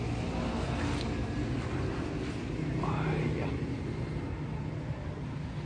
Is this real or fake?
real